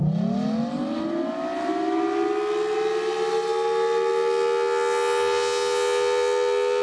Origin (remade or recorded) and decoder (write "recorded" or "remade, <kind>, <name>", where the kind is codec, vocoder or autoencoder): recorded